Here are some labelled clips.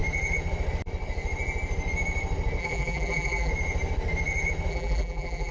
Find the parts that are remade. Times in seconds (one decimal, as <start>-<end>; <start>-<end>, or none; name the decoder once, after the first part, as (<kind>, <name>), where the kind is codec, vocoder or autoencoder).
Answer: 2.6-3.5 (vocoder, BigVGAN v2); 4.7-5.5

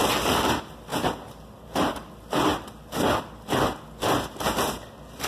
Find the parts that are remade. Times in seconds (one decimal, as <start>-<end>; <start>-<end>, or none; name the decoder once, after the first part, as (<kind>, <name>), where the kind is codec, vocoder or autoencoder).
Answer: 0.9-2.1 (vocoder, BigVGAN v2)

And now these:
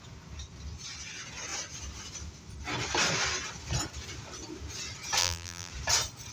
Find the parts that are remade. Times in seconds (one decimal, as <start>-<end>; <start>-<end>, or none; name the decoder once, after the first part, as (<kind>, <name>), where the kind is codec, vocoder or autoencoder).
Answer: 5.2-5.7 (vocoder, BigVGAN v2)

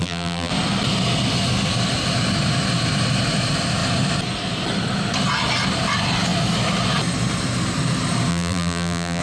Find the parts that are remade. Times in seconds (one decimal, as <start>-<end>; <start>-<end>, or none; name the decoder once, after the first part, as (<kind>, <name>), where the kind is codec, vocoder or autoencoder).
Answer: 0.0-0.5 (vocoder, BigVGAN v2); 8.3-9.2